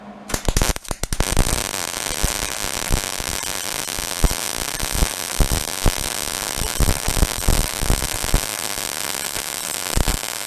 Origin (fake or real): real